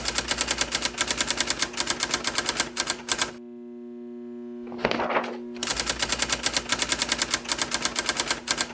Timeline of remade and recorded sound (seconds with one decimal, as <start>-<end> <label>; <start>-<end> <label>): 0.0-8.7 recorded